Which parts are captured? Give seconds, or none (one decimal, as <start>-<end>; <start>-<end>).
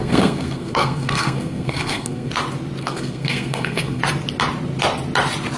2.3-2.8; 4.0-5.6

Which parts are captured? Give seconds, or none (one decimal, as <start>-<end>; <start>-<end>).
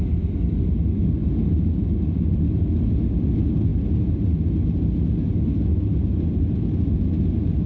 0.0-7.7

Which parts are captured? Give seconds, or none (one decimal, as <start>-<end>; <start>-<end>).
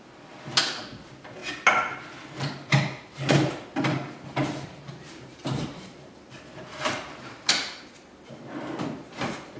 0.0-2.4; 7.6-9.6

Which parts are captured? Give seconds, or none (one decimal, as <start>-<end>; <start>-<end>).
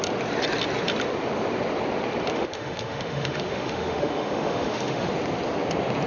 0.0-2.3; 5.1-6.1